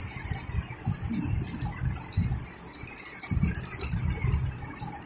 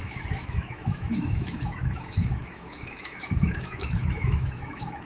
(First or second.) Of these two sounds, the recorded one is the first